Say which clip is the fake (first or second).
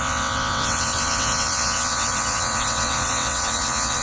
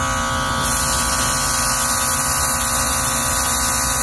first